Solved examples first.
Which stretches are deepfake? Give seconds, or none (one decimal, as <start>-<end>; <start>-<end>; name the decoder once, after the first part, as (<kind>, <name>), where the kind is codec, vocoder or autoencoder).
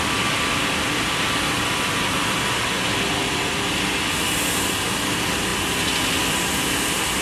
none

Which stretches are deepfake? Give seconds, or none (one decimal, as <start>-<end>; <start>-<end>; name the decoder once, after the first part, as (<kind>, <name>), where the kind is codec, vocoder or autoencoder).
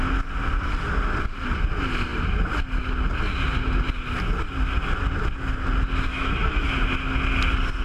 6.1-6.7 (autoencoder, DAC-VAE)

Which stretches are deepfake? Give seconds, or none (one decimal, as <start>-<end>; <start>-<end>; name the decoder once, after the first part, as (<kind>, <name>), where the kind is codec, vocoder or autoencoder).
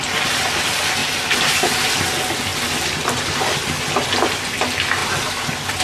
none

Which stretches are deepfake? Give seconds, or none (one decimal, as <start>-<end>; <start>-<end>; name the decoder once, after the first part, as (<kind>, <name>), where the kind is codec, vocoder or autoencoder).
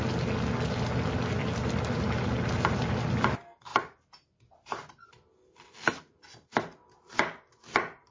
none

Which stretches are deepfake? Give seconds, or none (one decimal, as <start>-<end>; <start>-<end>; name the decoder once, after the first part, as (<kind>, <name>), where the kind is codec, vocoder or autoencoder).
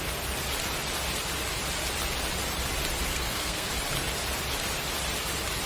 3.1-3.7 (codec, SNAC)